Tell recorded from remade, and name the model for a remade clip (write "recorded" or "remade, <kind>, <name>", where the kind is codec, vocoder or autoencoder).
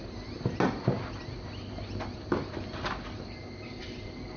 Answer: recorded